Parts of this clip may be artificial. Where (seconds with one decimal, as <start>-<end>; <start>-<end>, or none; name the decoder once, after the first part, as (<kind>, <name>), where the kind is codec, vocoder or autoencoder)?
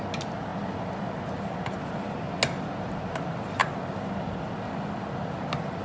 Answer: none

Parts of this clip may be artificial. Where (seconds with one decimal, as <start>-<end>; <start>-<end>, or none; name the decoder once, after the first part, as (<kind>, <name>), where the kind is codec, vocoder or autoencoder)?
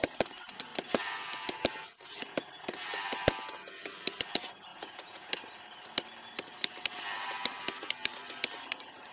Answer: 4.7-5.3 (vocoder, Vocos)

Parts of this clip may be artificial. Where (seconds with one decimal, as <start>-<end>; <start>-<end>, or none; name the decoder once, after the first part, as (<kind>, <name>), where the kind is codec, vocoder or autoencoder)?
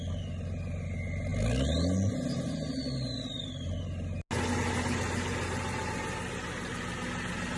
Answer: none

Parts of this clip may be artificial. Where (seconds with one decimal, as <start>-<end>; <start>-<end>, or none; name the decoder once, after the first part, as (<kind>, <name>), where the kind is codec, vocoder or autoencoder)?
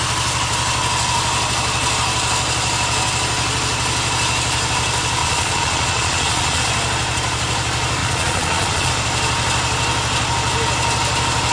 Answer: 5.2-6.6 (vocoder, Vocos); 8.0-8.9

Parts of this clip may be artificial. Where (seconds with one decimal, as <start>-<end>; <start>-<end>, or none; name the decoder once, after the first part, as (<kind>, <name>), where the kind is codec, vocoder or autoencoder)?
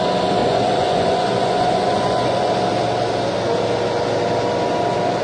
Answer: 0.4-2.5 (vocoder, Vocos)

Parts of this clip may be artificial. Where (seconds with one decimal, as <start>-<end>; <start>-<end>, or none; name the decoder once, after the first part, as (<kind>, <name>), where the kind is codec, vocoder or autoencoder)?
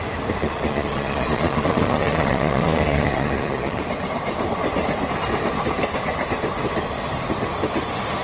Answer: 0.4-3.8 (vocoder, Vocos)